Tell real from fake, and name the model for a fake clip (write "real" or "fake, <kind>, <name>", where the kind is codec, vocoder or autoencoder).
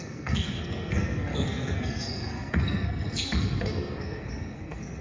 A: fake, codec, SNAC